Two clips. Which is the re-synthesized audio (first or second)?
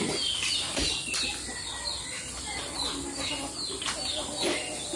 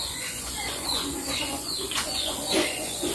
second